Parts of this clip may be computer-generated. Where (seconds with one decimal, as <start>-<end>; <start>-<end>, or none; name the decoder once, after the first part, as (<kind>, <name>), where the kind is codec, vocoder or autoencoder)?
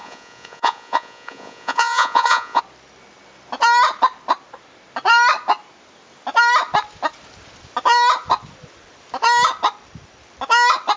0.0-2.6 (vocoder, Vocos)